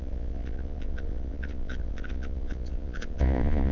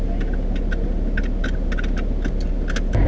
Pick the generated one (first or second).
first